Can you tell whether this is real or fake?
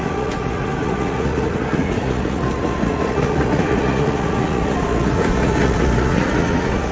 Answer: fake